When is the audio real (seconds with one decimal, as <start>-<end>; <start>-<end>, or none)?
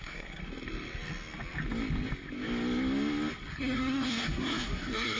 0.4-3.5